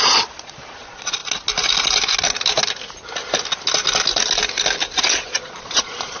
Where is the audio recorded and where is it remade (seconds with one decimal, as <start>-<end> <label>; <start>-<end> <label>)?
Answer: 0.0-1.2 remade; 1.2-4.9 recorded; 4.9-6.2 remade